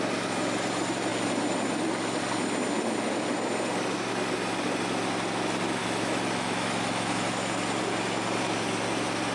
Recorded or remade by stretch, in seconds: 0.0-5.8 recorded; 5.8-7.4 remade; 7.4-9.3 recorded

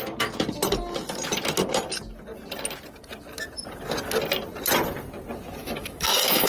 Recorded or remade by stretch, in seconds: 0.0-5.6 recorded; 5.6-6.5 remade